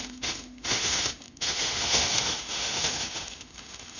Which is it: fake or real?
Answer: fake